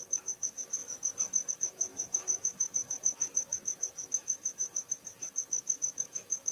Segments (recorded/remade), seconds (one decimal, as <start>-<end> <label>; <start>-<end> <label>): 0.0-0.8 remade; 0.8-1.5 recorded; 1.5-6.5 remade